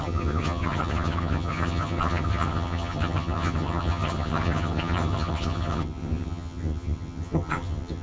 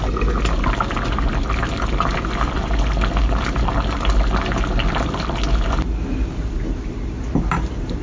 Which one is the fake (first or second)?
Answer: first